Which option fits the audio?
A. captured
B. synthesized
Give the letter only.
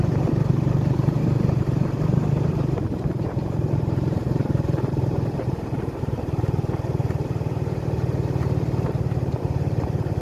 B